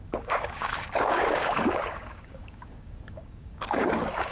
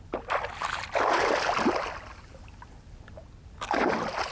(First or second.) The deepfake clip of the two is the first